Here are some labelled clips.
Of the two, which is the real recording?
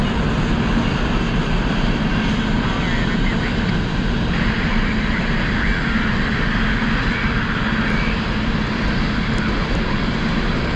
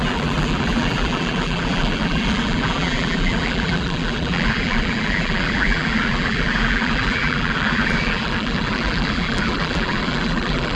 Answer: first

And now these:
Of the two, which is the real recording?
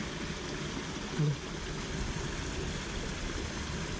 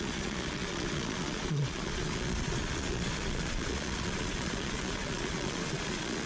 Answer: first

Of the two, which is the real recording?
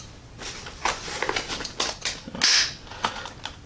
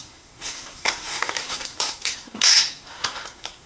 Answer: first